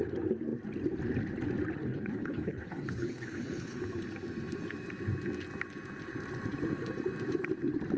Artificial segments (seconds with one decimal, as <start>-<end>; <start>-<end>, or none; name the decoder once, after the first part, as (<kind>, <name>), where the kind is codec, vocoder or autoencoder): 1.9-3.8 (codec, HILCodec)